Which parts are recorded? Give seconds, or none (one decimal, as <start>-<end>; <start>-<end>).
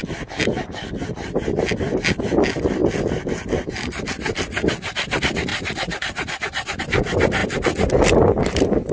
0.0-5.5; 6.8-8.9